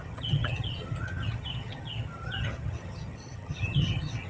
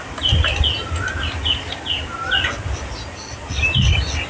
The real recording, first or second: second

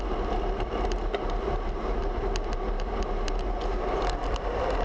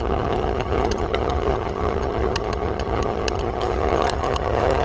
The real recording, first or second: first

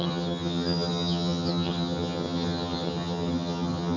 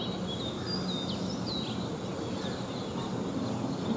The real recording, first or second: second